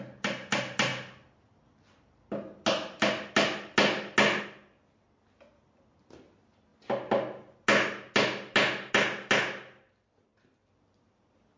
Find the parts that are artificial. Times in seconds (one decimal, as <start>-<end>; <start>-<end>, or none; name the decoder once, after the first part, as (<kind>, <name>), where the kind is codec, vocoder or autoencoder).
none